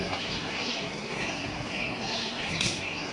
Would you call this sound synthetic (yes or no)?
yes